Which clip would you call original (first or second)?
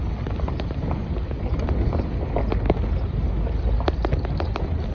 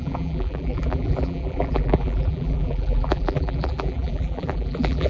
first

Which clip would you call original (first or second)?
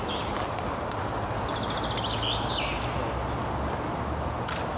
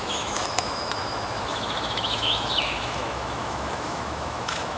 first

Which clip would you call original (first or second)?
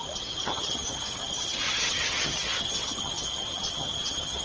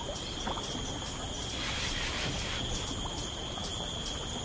second